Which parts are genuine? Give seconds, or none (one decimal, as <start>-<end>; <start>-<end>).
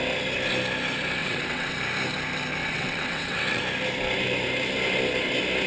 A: 0.0-1.2; 1.7-2.6; 3.6-5.7